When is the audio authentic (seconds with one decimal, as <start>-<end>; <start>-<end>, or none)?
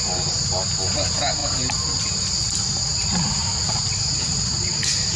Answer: 0.0-5.2